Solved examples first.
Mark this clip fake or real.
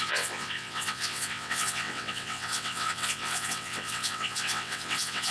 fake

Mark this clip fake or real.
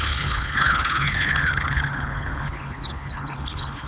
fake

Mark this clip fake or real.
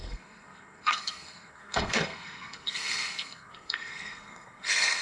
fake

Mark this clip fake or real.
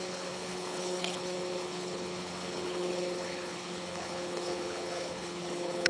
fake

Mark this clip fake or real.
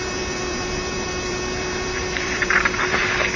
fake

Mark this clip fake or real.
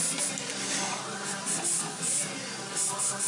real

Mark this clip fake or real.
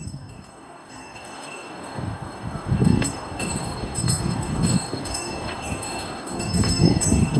fake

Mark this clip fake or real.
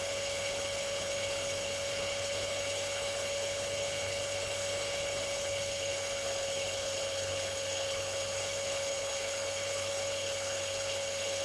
fake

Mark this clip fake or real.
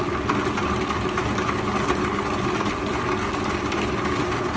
real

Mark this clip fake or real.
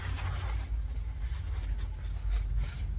real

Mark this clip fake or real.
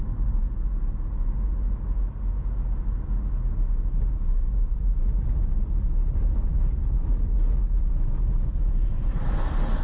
real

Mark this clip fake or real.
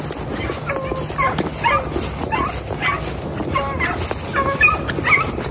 real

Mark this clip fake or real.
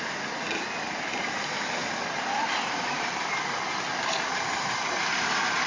real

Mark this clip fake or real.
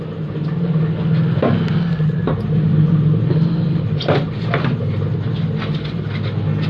real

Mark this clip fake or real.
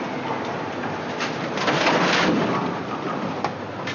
real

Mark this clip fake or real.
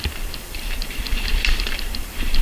fake